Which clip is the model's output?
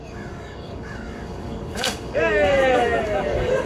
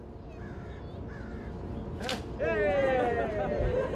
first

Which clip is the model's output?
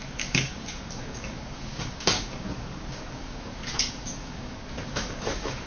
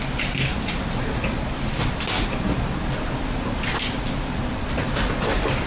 first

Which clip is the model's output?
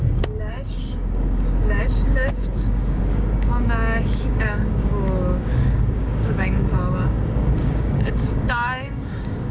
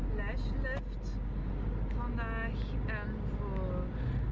first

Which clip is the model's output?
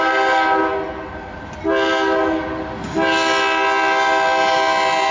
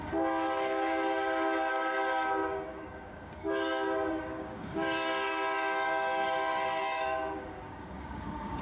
second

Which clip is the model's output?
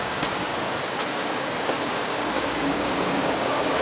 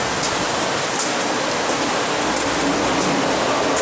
first